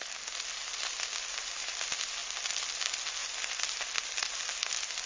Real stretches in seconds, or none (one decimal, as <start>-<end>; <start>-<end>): 0.0-5.1